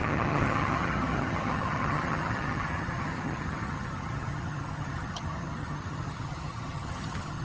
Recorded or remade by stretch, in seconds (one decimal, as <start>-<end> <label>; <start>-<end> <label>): 0.0-7.4 remade